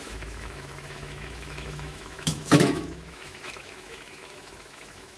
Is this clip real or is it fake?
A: fake